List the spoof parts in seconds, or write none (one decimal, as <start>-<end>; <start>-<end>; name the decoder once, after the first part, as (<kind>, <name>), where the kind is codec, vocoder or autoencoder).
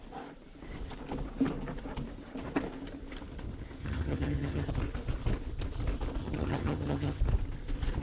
3.8-4.7 (vocoder, HiFi-GAN); 6.2-7.2